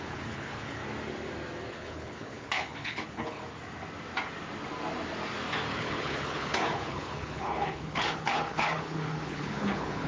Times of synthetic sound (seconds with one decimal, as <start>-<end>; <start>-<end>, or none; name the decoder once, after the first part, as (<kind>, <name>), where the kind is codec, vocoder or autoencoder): 0.0-0.8 (codec, HILCodec); 1.7-3.4; 5.7-10.1